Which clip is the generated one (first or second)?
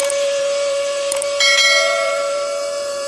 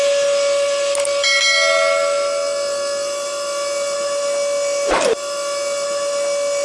first